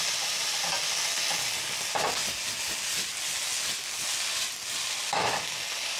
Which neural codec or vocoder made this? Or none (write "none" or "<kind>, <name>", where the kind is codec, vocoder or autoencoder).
none